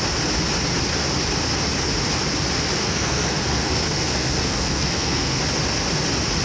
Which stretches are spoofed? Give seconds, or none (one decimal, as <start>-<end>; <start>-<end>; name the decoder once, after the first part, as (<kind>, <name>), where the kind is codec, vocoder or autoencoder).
2.8-5.4 (codec, SNAC)